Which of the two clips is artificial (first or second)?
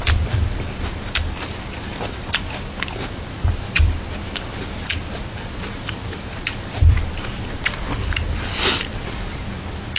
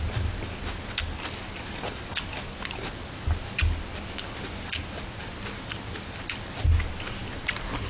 first